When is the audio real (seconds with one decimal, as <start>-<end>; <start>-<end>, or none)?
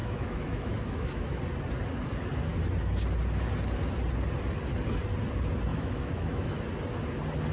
1.4-5.7; 6.5-7.5